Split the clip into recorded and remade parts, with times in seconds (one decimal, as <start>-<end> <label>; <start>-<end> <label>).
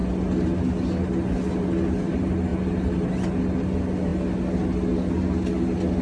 0.0-6.0 recorded